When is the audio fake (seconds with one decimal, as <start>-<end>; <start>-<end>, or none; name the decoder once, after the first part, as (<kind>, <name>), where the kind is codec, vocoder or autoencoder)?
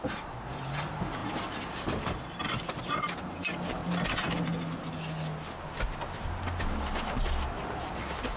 0.0-3.8 (vocoder, BigVGAN v2); 7.7-8.4